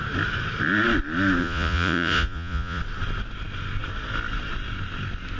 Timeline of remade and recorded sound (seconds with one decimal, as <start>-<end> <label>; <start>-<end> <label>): 0.0-1.4 recorded; 1.4-2.8 remade; 2.8-5.4 recorded